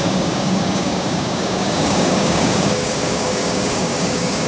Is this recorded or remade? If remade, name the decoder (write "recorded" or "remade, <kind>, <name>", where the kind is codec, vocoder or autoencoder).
remade, codec, DAC